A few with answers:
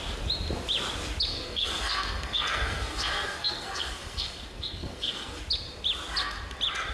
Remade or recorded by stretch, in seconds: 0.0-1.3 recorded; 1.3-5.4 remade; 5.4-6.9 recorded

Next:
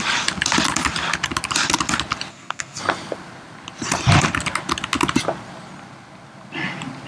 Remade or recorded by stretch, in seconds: 0.0-2.3 recorded; 2.3-2.8 remade; 2.8-7.1 recorded

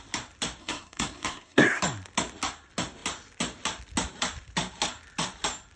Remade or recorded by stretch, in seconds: 0.0-0.6 recorded; 0.6-1.8 remade; 1.8-5.8 recorded

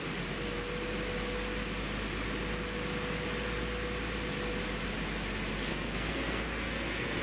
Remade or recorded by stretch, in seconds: 0.0-5.7 recorded; 5.7-7.2 remade

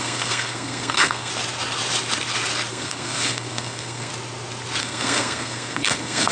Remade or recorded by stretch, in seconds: 0.0-1.3 remade; 1.3-2.7 recorded; 2.7-4.1 remade; 4.1-4.8 recorded; 4.8-6.3 remade